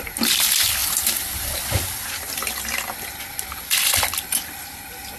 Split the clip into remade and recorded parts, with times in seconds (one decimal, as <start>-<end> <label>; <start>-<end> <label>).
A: 0.0-0.8 remade; 0.8-1.7 recorded; 1.7-5.2 remade